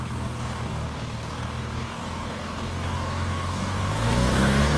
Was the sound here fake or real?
fake